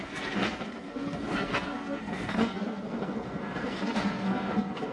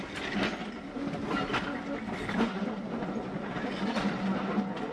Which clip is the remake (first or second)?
first